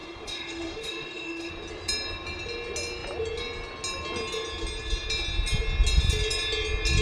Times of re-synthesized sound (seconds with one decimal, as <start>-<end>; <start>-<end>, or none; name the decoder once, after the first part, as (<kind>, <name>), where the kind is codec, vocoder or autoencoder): 0.0-1.5 (autoencoder, DAC-VAE)